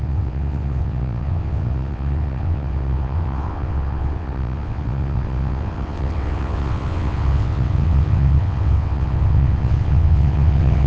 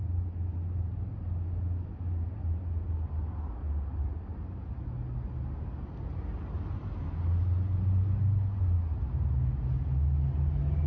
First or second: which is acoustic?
second